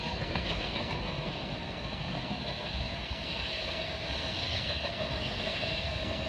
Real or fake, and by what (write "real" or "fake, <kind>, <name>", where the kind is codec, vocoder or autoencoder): fake, codec, SNAC